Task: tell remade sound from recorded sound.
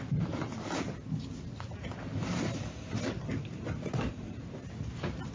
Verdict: recorded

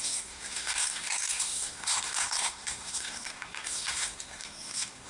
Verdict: remade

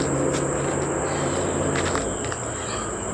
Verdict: recorded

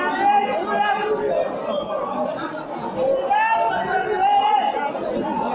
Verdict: recorded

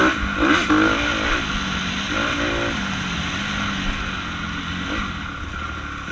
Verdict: recorded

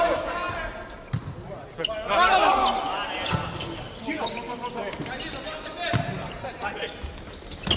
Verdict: recorded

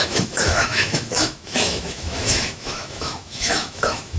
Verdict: remade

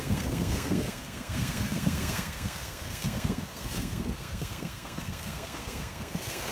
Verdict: remade